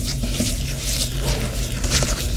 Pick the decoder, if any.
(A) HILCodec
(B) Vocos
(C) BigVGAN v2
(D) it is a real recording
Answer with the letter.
D